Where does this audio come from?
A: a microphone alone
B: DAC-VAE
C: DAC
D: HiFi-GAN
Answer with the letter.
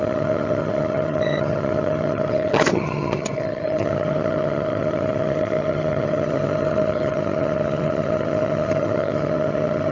D